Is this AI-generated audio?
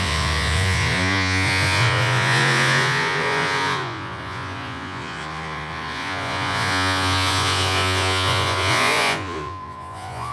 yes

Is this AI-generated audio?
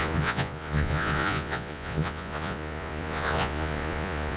yes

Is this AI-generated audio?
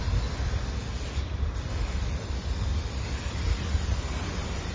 no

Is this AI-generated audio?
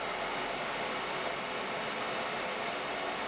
no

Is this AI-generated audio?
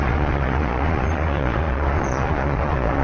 yes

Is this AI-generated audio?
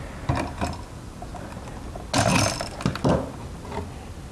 no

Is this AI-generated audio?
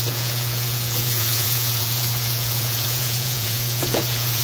yes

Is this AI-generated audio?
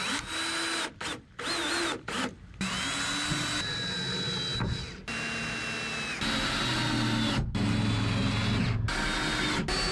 no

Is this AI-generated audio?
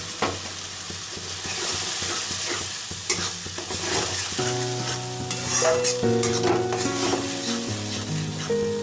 no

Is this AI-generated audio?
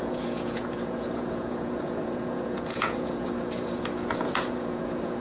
yes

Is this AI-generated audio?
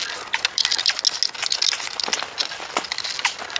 no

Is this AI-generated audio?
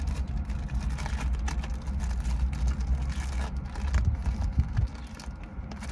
no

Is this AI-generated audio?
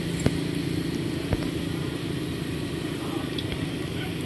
no